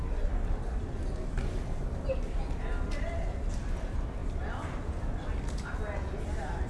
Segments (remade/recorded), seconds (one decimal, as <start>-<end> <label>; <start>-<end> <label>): 0.0-6.7 recorded